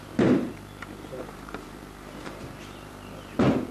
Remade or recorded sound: remade